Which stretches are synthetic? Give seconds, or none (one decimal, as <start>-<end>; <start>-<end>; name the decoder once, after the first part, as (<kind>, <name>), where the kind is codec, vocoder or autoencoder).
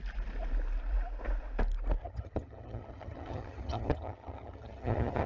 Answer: 2.0-5.3 (vocoder, HiFi-GAN)